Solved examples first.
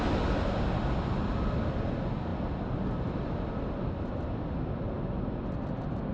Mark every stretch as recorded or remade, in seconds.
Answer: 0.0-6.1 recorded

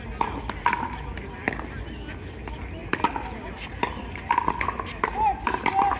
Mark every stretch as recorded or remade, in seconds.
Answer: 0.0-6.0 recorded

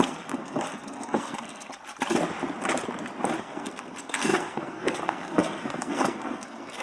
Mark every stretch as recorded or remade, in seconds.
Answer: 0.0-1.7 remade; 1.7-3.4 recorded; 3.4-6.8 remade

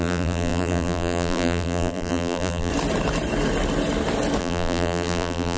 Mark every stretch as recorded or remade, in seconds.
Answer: 0.0-2.7 remade; 2.7-4.4 recorded; 4.4-5.6 remade

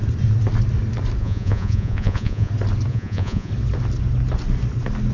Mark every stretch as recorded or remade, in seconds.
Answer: 0.0-1.2 recorded; 1.2-2.5 remade; 2.5-2.9 recorded; 2.9-3.5 remade; 3.5-5.1 recorded

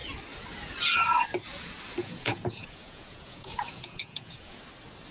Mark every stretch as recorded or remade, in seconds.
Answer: 0.0-2.0 recorded; 2.0-4.6 remade; 4.6-5.1 recorded

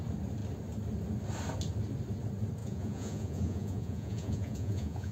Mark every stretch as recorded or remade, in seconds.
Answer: 0.0-2.6 recorded; 2.6-5.1 remade

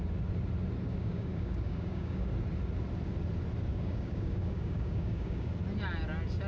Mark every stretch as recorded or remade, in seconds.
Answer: 0.0-0.9 recorded; 0.9-2.3 remade; 2.3-3.7 recorded; 3.7-5.5 remade; 5.5-6.5 recorded